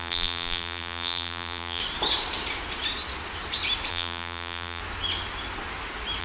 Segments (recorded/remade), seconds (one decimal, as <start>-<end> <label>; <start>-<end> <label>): 0.0-1.8 remade; 1.8-3.9 recorded; 3.9-4.8 remade; 4.8-6.2 recorded